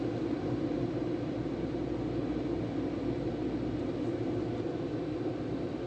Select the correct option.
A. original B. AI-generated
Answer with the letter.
A